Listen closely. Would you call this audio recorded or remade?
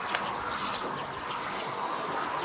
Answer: recorded